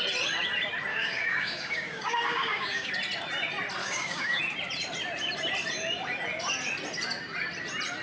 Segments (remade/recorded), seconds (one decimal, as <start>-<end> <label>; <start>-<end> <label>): 0.0-0.9 recorded; 0.9-2.9 remade; 2.9-3.8 recorded; 3.8-4.4 remade; 4.4-8.0 recorded